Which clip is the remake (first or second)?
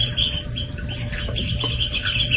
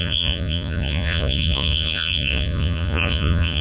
second